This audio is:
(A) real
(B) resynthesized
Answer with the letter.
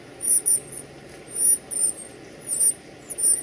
A